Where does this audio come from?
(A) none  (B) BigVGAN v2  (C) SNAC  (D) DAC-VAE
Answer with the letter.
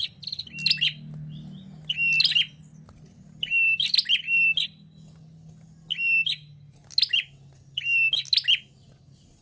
A